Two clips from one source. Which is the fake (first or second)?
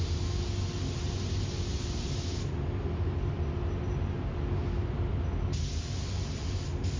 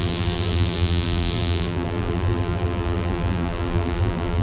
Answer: second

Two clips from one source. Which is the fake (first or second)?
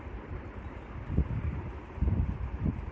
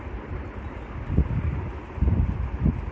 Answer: first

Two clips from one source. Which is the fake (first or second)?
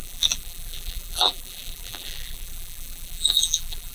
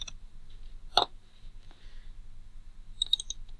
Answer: first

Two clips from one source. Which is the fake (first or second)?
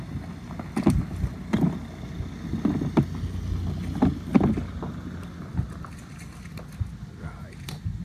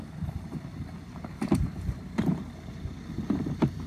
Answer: second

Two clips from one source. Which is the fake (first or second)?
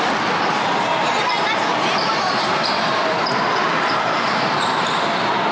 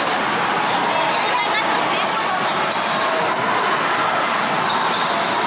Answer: first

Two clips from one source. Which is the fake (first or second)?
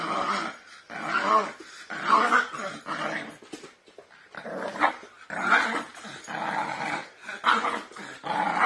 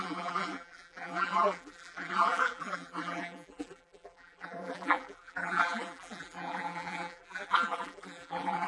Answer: second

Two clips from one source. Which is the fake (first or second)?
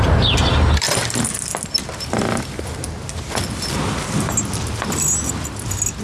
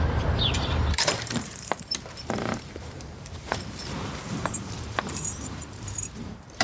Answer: second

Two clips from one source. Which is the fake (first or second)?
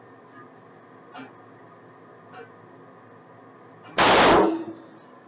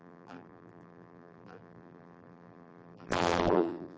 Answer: second